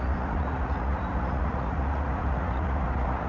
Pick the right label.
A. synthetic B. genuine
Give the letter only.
A